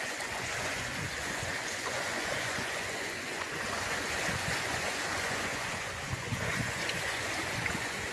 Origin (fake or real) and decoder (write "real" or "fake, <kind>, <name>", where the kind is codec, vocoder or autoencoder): fake, vocoder, Vocos